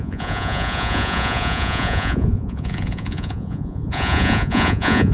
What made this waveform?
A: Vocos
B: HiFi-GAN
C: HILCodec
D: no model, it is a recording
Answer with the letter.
A